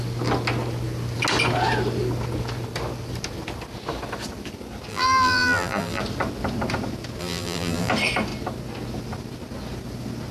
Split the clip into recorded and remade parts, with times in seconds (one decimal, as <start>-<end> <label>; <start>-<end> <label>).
0.0-4.9 recorded; 4.9-6.0 remade; 6.0-7.2 recorded; 7.2-7.9 remade; 7.9-10.3 recorded